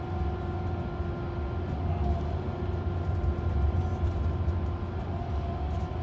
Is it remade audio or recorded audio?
recorded